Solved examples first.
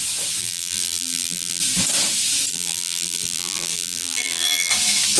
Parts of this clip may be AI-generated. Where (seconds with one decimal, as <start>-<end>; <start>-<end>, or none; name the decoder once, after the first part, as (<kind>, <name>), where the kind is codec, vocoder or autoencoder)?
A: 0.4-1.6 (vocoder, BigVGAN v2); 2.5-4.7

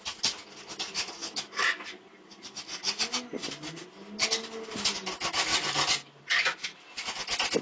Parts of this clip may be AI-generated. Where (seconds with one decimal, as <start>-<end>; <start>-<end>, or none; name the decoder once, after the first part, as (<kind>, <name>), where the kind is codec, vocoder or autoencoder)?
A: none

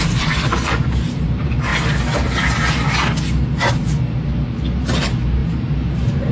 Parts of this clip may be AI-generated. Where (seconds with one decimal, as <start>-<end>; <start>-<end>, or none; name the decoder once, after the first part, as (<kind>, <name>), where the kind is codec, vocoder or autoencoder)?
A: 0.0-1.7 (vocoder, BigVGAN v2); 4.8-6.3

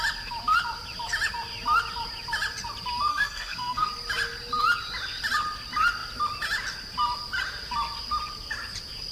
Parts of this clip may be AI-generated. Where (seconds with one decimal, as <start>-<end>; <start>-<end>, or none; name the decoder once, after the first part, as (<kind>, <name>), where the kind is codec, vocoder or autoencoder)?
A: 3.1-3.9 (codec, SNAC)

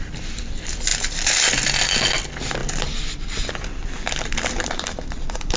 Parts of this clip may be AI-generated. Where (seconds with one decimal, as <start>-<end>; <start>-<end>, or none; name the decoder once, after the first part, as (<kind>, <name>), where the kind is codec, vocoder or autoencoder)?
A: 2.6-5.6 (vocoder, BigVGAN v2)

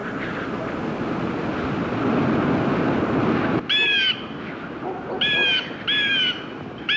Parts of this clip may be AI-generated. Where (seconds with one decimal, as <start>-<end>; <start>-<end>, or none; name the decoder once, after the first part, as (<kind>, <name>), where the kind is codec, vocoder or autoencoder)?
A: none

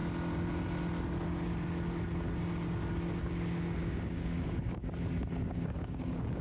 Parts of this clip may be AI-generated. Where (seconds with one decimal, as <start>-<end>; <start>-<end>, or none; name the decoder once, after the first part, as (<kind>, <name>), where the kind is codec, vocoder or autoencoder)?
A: 3.8-4.8 (codec, DAC); 5.5-6.4